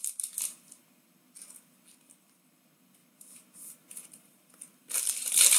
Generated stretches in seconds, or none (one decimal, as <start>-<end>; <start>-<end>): none